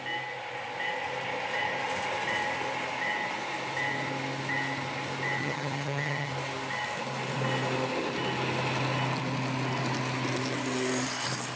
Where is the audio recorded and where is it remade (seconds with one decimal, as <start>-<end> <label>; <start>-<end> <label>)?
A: 0.0-5.4 recorded; 5.4-6.3 remade; 6.3-11.6 recorded